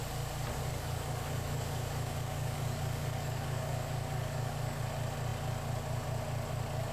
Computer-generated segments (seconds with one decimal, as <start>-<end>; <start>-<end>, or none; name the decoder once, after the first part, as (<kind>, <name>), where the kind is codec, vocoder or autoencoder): 0.7-4.8 (codec, DAC)